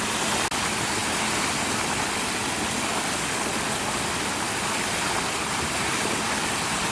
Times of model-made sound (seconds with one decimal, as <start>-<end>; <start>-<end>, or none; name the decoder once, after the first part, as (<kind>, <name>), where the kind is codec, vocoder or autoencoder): none